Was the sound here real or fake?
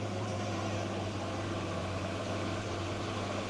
fake